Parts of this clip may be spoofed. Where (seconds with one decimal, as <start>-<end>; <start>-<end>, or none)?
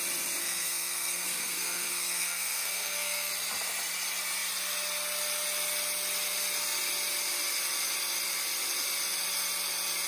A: 0.4-3.3